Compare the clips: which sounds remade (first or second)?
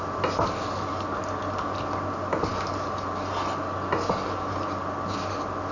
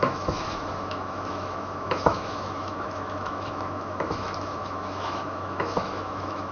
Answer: second